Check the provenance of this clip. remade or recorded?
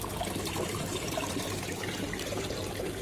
remade